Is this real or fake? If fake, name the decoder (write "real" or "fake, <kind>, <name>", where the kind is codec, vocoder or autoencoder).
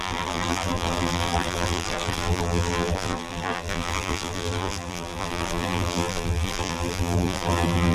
fake, vocoder, BigVGAN v2